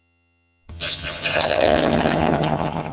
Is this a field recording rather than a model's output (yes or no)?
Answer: no